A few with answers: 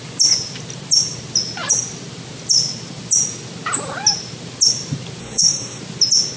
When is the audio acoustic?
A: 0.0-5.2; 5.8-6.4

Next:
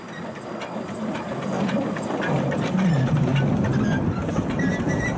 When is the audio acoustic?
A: 0.0-5.2

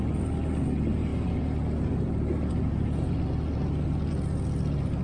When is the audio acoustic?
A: 0.0-5.0

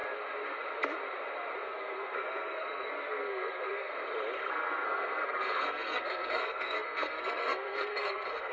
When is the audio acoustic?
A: 0.0-1.6; 3.9-4.5

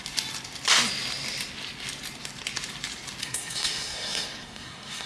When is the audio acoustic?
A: 0.0-3.2

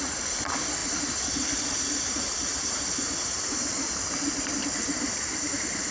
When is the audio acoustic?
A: 0.0-5.9